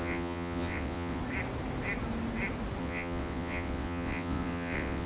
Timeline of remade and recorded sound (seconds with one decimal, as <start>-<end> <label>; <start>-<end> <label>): 0.0-1.2 remade; 1.2-2.8 recorded; 2.8-5.1 remade